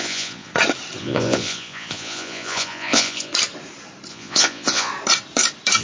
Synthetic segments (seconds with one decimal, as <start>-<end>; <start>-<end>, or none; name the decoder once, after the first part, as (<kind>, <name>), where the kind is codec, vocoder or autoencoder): 0.0-0.5 (vocoder, Vocos); 1.0-3.3; 4.1-4.9